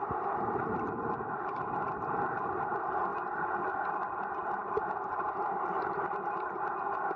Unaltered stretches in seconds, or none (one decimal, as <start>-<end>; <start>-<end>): 3.1-3.9

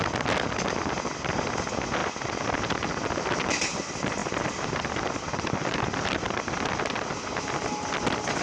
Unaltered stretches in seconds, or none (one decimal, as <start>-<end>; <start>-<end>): 0.0-2.0; 2.9-4.2; 6.1-8.4

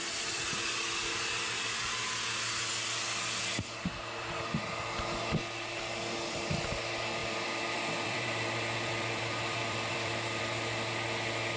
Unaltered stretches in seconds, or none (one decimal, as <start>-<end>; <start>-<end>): 0.0-1.0; 1.8-7.2; 10.4-11.6